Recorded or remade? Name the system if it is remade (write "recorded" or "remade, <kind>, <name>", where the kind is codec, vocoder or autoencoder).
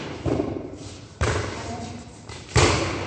recorded